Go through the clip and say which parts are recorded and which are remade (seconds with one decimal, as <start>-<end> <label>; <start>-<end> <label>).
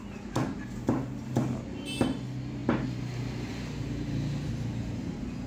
0.0-5.5 recorded